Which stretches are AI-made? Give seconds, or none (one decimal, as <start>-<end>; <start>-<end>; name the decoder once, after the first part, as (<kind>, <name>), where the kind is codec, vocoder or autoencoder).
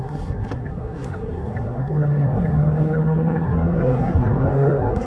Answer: 0.0-5.1 (codec, SNAC)